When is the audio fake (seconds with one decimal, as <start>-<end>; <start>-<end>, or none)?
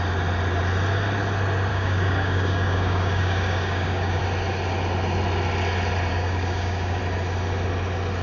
1.7-4.2; 6.1-7.0